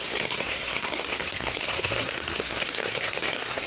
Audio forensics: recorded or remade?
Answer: remade